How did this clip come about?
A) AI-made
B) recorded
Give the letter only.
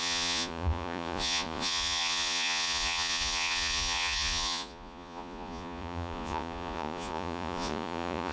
A